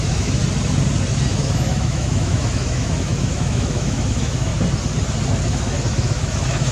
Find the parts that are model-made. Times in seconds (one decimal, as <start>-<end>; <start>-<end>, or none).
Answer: 0.0-0.4; 1.3-4.5; 5.5-6.7